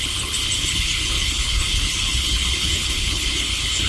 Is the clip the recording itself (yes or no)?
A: no